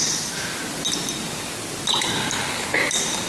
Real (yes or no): yes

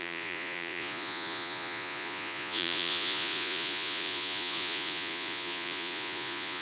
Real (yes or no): no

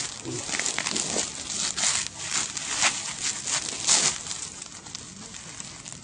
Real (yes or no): yes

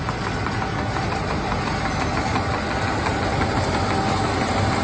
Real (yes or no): yes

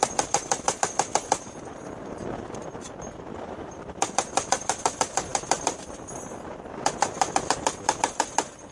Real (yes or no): yes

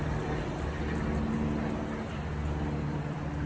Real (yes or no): yes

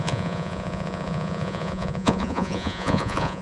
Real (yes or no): no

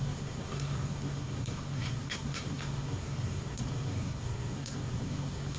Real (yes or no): no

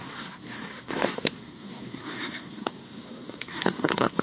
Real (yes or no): no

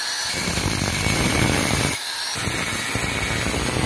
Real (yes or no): yes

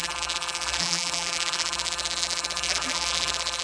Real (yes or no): no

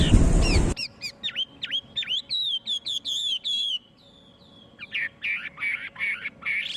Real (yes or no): yes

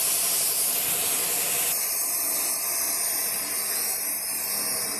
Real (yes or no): yes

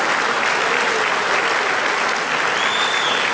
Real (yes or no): yes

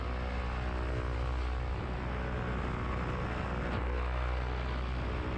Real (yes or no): yes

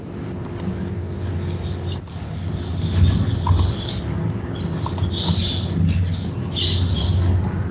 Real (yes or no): yes